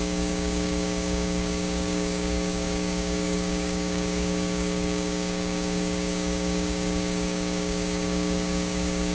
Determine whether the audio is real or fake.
fake